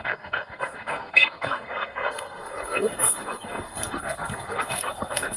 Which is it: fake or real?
fake